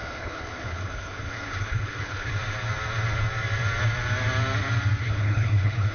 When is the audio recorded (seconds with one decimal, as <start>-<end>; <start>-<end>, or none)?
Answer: 2.3-5.0